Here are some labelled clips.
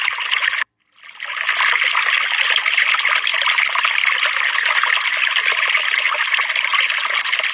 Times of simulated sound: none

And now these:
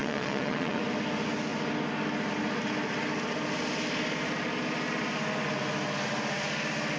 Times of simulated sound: 0.0-0.8

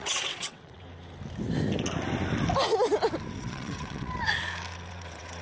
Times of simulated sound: 0.0-0.8; 3.4-4.2; 4.9-5.4

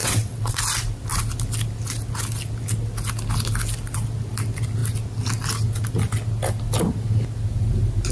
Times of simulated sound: 0.0-0.6

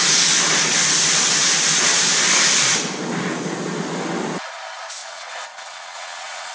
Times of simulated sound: 5.0-6.5

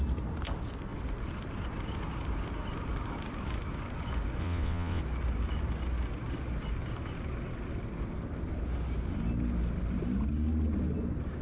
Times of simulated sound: 4.4-5.0

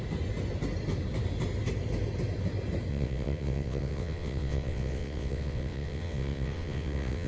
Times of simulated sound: 2.9-7.3